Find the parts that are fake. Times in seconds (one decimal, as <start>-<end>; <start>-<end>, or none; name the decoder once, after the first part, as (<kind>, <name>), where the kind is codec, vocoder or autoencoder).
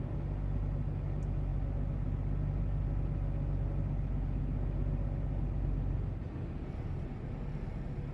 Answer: none